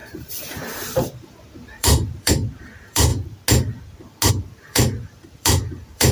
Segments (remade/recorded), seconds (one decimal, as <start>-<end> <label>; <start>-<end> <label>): 0.0-3.1 remade; 3.1-4.3 recorded; 4.3-6.1 remade